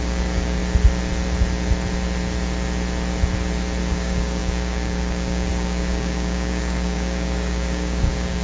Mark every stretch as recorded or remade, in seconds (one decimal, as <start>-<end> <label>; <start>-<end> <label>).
0.0-0.6 remade; 0.6-3.9 recorded; 3.9-8.4 remade